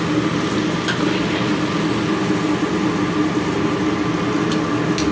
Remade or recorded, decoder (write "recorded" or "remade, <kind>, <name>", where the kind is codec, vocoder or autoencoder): recorded